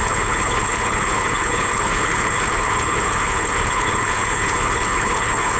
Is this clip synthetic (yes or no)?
yes